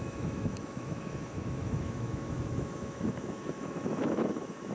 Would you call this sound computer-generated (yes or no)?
yes